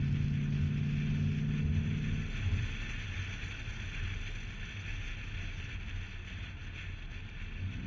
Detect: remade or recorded recorded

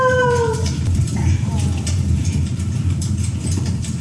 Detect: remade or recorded remade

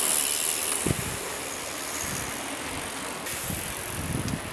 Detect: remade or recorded recorded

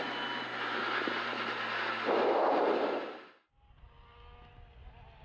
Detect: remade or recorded recorded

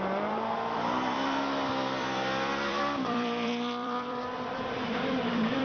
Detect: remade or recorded remade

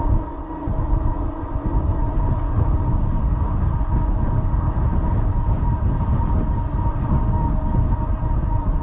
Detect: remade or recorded recorded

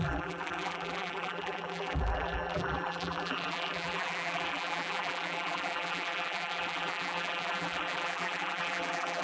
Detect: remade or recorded remade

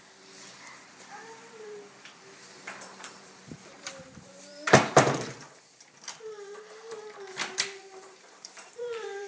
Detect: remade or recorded remade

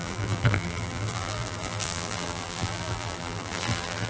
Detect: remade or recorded remade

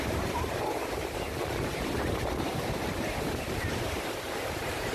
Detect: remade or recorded remade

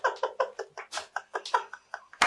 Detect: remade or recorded recorded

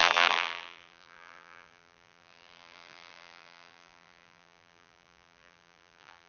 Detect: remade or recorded remade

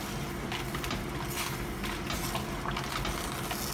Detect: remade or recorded recorded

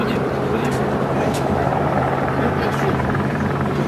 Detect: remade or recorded remade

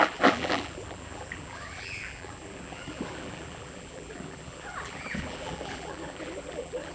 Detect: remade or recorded remade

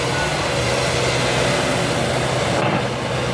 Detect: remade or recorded recorded